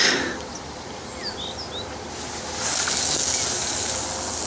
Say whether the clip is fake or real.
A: real